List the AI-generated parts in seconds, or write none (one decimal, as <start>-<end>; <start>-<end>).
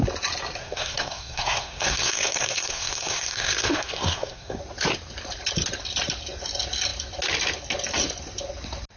0.6-4.6